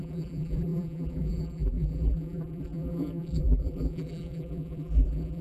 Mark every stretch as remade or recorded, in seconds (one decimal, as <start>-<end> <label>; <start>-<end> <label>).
0.0-5.4 remade